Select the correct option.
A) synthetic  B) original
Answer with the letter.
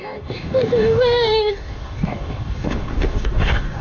A